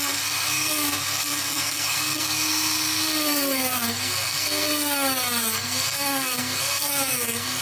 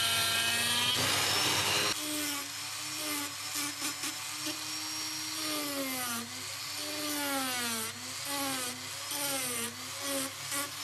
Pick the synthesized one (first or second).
first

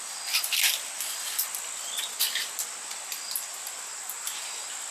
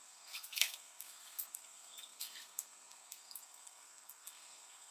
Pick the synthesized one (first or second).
second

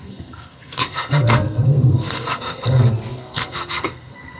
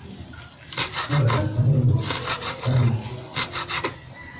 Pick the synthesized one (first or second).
first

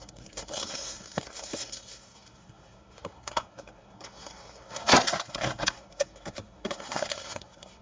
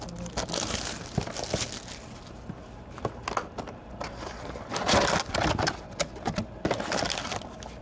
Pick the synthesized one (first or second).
first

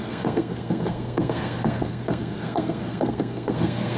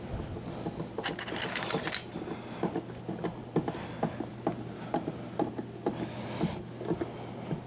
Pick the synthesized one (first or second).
first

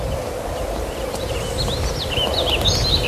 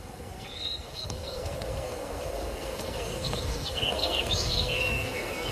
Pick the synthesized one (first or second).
second